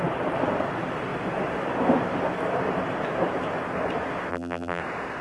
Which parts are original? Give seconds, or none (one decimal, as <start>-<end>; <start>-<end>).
0.0-4.3; 4.8-5.2